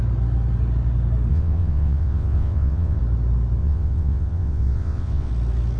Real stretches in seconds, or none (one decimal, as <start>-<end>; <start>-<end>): 0.0-1.3; 3.0-3.6; 5.3-5.8